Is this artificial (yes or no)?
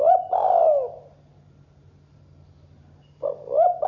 no